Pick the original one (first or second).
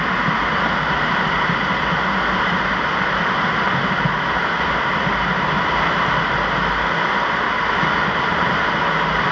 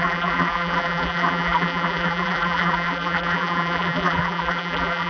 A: first